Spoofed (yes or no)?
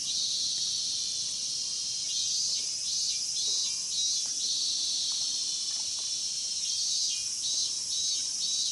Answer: yes